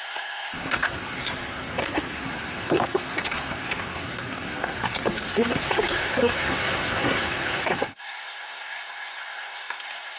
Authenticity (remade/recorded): remade